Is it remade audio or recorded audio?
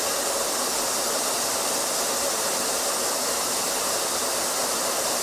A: recorded